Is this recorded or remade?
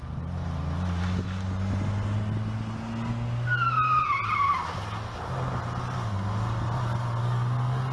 recorded